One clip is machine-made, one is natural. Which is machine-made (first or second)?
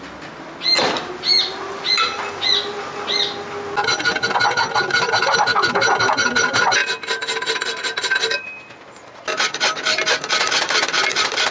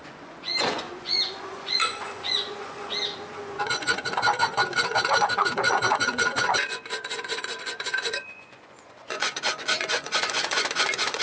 second